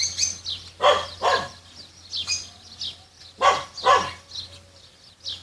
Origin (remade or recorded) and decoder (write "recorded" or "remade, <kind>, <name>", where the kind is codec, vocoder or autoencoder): recorded